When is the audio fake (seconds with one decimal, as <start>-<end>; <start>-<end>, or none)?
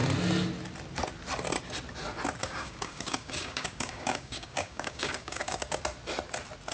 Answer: 2.4-5.8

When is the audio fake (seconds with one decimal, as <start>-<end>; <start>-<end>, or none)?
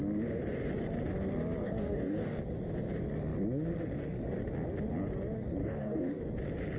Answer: 1.6-2.4; 5.6-6.2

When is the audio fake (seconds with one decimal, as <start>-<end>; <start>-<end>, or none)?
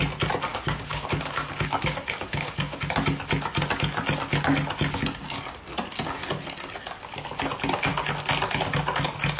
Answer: 0.5-2.8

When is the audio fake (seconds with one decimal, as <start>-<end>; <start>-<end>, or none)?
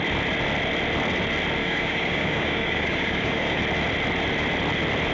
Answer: 1.6-3.6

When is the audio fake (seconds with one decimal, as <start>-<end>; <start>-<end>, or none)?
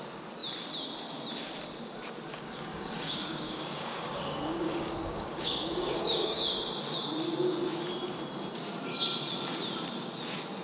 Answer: 2.3-6.5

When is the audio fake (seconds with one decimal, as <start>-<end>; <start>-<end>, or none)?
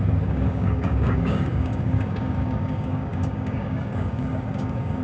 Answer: 0.0-5.0